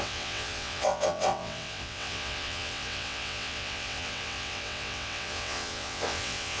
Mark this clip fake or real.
fake